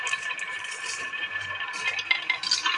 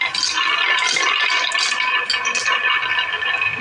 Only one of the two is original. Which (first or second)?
second